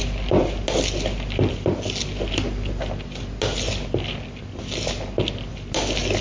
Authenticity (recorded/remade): recorded